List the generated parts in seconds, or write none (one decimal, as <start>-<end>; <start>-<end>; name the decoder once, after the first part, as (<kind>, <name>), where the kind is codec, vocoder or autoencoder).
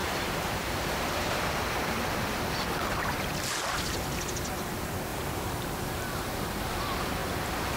0.0-1.5 (vocoder, BigVGAN v2); 5.1-6.8